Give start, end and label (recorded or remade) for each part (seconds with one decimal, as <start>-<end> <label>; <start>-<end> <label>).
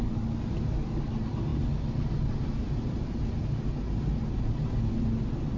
0.0-5.6 recorded